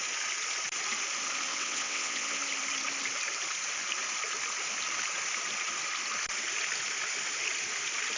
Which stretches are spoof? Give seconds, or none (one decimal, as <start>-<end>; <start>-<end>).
1.5-2.4